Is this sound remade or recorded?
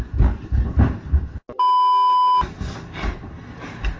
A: recorded